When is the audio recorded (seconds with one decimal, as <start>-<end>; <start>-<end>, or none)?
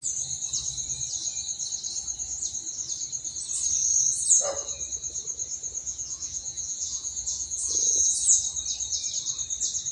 0.0-5.8; 8.4-9.9